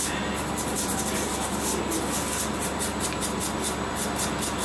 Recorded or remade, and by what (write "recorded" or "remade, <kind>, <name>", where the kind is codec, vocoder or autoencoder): recorded